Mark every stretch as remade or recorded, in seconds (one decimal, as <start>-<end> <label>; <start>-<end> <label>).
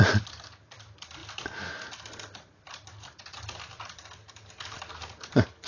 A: 0.0-5.7 recorded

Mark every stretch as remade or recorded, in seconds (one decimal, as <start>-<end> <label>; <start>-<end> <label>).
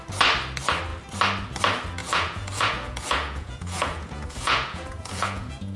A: 0.0-2.0 recorded; 2.0-5.8 remade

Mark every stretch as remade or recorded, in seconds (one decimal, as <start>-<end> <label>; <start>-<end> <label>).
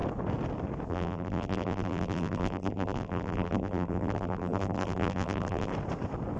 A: 0.0-0.9 recorded; 0.9-5.7 remade; 5.7-6.4 recorded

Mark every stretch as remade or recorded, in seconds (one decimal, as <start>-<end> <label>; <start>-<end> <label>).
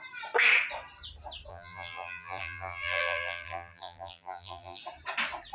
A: 0.0-1.5 recorded; 1.5-4.8 remade; 4.8-5.5 recorded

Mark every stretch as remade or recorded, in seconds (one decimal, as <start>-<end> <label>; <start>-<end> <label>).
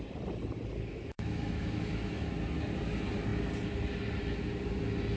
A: 0.0-0.9 recorded; 0.9-2.3 remade; 2.3-5.2 recorded